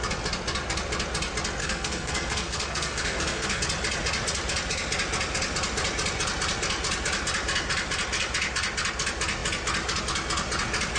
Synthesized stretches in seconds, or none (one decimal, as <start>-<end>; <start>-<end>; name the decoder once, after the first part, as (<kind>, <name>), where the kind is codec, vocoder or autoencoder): 1.6-3.6 (codec, SNAC)

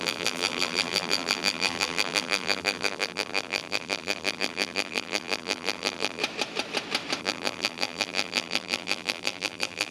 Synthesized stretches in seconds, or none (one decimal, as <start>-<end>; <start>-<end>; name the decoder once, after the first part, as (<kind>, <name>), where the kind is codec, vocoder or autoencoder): 0.0-6.2 (vocoder, BigVGAN v2); 7.2-9.9

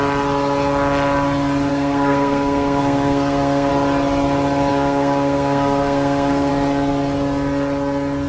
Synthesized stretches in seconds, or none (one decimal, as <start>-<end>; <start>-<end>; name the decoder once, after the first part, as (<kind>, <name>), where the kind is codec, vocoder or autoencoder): 1.7-3.7 (codec, SNAC); 4.7-6.5

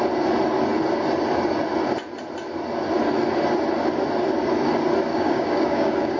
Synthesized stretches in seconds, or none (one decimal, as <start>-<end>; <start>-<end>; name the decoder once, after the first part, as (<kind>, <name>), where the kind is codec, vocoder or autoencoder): 5.1-6.2 (codec, DAC)

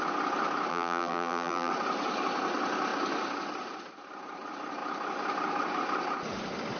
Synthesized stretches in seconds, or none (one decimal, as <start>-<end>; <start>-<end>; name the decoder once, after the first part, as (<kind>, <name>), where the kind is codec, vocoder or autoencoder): 0.7-1.7 (vocoder, BigVGAN v2)